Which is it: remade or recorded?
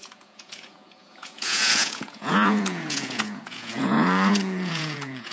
remade